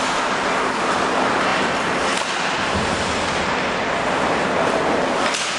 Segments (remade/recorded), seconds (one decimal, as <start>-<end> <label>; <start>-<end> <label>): 0.0-5.6 recorded